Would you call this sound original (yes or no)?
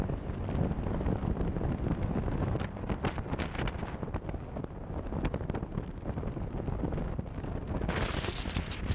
yes